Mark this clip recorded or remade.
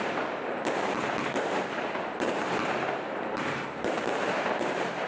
remade